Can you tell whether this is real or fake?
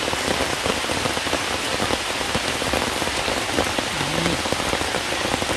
real